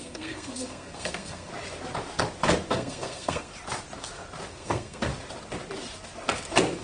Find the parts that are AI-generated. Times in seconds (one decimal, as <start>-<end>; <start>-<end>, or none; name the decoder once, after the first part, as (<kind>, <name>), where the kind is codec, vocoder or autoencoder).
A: 0.0-1.5 (codec, SNAC); 2.7-3.5; 4.5-5.1